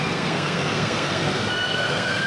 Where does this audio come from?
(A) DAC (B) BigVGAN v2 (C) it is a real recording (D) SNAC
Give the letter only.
D